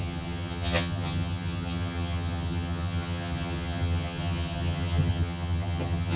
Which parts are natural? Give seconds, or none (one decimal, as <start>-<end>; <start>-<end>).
none